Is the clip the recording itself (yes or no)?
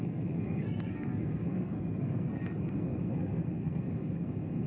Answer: no